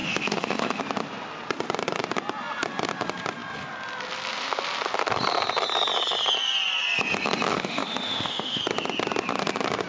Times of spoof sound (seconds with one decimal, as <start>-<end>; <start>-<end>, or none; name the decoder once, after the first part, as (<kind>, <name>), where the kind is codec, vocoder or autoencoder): 0.0-0.8 (autoencoder, DAC-VAE); 7.5-8.6